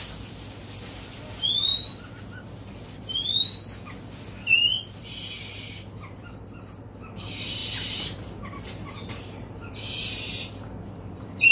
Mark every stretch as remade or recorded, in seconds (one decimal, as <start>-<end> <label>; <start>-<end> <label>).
0.0-7.6 recorded; 7.6-11.5 remade